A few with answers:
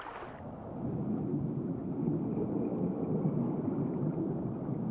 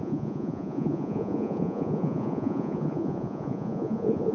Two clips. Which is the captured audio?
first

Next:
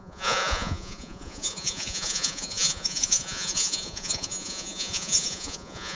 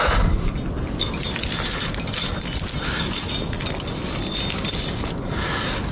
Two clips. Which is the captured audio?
second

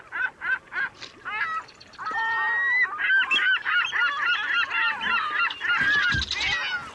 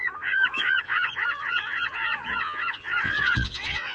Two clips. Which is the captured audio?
first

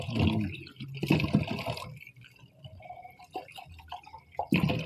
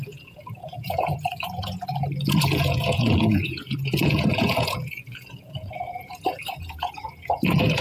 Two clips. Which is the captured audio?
first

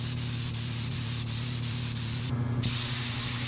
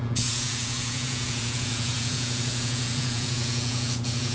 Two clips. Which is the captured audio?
first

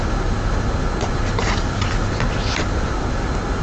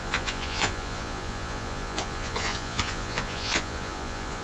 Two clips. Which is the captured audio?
first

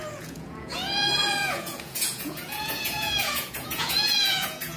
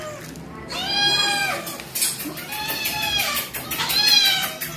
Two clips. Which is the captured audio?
second